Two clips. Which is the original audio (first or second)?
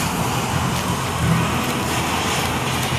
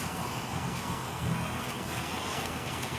first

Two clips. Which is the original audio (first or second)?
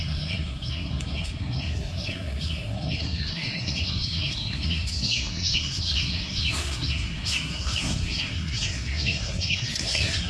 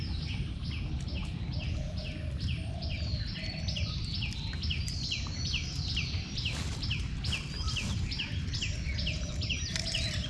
second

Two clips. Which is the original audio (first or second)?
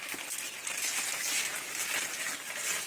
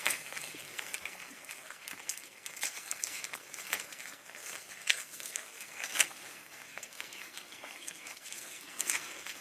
first